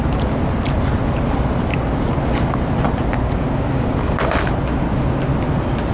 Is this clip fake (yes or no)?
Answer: no